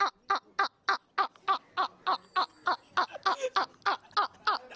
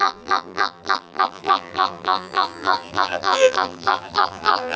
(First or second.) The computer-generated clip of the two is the second